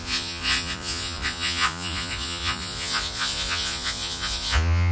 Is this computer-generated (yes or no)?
yes